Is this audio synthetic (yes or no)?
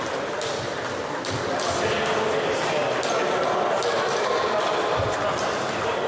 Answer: no